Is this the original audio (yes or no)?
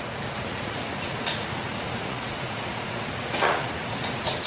no